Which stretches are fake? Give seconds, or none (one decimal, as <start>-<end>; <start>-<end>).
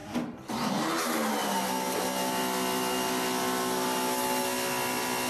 none